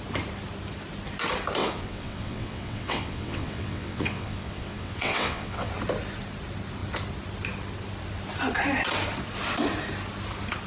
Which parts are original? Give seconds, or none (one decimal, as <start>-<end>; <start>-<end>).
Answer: 0.0-1.6; 5.7-10.7